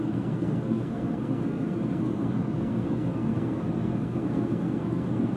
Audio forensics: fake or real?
fake